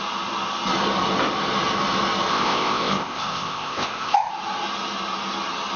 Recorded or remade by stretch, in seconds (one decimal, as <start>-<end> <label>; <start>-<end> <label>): 0.0-2.3 recorded; 2.3-4.3 remade; 4.3-5.8 recorded